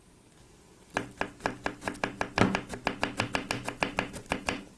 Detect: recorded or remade recorded